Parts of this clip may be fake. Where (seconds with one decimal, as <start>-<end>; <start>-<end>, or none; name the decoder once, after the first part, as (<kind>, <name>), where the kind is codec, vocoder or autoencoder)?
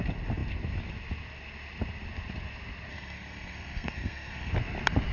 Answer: 2.9-4.5 (codec, SNAC)